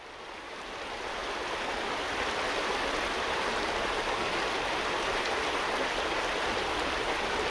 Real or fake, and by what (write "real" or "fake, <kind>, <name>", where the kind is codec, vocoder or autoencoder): real